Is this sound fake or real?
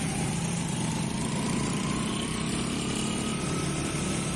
fake